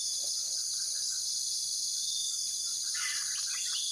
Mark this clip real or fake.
real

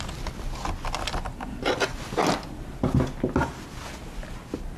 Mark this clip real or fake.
real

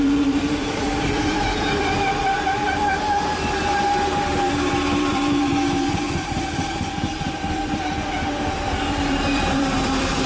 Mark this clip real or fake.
fake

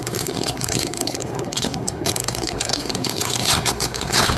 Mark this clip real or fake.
fake